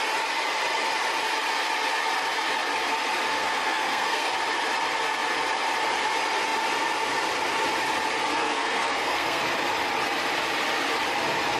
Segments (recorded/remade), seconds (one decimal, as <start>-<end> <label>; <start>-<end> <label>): 0.0-3.4 recorded; 3.4-4.3 remade; 4.3-8.4 recorded; 8.4-9.4 remade; 9.4-11.6 recorded